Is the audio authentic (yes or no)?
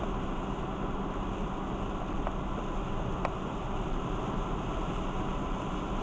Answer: yes